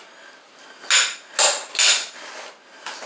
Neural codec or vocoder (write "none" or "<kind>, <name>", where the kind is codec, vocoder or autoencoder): none